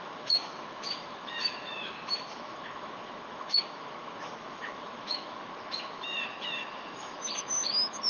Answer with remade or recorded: remade